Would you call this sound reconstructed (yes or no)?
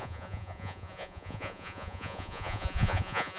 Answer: yes